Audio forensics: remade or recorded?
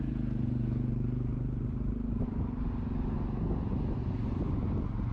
recorded